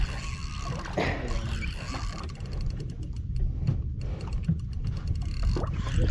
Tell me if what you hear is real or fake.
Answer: real